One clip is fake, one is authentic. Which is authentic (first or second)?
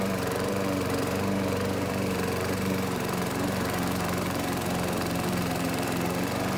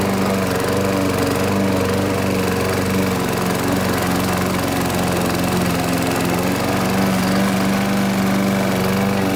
second